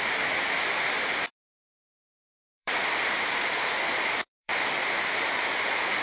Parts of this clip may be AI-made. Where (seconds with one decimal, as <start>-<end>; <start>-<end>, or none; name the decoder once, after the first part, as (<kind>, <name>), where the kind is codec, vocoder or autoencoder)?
0.0-4.5 (vocoder, BigVGAN v2); 5.6-6.0